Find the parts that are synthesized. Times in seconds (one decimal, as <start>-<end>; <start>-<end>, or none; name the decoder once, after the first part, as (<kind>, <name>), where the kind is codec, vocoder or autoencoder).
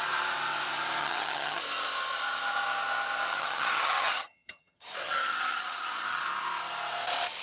1.0-1.6 (vocoder, HiFi-GAN); 3.3-6.2